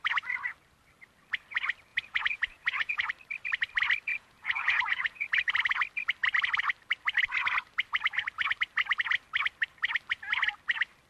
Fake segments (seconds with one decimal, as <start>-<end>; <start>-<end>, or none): 1.9-3.1; 4.1-5.5